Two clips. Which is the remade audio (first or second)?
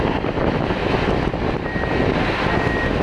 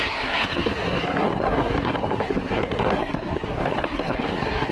second